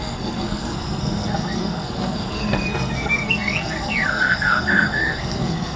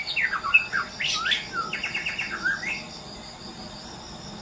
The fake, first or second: first